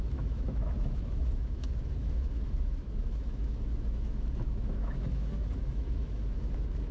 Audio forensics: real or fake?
fake